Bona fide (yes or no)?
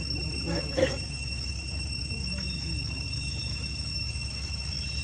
no